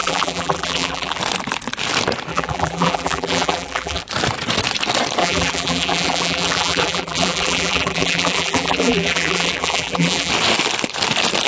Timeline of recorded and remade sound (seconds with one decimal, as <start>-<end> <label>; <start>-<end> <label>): 0.0-1.2 remade; 1.2-2.3 recorded; 2.3-4.0 remade; 4.0-5.2 recorded; 5.2-10.3 remade; 10.3-11.5 recorded